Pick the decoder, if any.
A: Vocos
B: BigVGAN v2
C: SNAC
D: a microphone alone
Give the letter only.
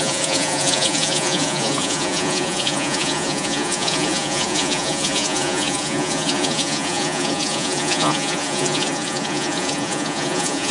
A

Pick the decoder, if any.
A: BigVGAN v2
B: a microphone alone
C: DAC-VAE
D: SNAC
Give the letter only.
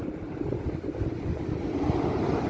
B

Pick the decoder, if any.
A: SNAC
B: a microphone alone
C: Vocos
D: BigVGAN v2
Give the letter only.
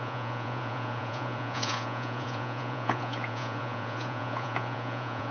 C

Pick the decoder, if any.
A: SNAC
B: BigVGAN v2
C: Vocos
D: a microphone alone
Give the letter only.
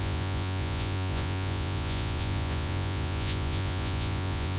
C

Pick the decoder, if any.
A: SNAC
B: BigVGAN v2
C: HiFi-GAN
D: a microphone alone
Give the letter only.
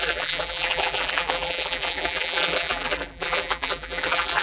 B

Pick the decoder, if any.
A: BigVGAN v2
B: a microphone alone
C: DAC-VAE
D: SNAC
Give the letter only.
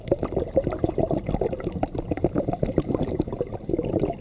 B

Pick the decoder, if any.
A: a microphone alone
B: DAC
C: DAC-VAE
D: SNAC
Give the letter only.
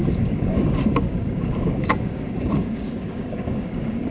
B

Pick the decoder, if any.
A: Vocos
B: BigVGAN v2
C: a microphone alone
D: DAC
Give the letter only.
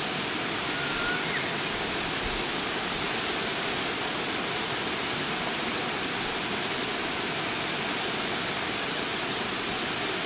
C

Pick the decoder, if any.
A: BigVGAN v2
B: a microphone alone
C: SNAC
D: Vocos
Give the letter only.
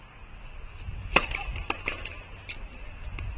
B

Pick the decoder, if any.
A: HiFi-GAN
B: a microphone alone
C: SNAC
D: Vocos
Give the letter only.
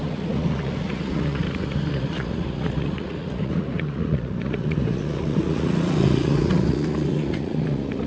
D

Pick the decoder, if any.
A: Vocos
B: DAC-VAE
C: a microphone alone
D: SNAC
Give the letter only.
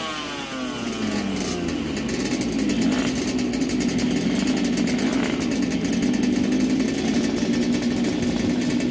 C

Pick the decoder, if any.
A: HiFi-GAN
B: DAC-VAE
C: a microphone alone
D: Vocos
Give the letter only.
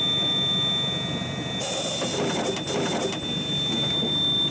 C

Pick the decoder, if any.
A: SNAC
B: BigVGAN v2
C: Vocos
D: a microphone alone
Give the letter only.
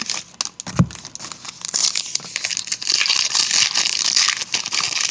D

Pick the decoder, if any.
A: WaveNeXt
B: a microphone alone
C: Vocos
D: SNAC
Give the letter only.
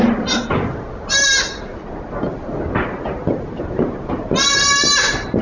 B